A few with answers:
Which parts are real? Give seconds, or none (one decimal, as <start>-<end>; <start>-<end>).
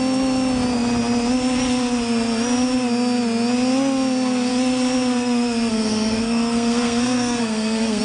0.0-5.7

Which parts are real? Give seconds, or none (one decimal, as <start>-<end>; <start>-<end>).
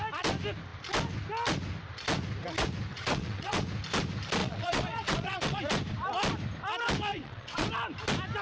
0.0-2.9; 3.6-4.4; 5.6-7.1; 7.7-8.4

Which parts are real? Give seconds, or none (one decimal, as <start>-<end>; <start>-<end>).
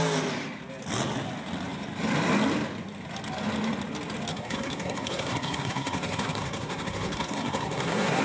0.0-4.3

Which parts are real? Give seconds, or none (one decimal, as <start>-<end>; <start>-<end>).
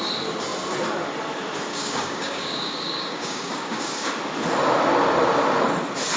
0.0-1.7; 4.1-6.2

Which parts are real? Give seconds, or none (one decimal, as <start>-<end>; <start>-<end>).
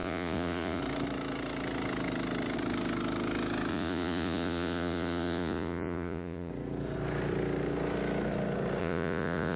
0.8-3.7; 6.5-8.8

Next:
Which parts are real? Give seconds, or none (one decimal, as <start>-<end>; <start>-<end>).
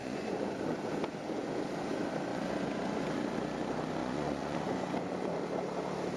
0.8-2.3; 3.1-4.0; 5.4-6.2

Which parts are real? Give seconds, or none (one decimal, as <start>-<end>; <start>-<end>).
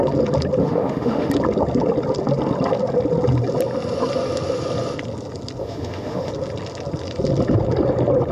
0.0-0.6; 1.3-5.6; 6.3-8.3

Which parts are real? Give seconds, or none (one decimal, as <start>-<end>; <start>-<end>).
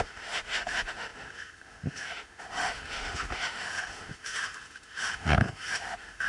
none